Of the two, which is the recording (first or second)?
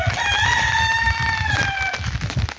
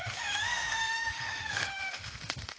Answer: first